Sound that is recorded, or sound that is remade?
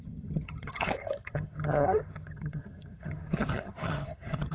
remade